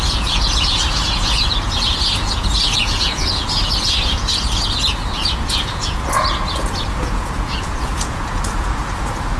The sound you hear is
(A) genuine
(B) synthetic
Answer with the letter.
B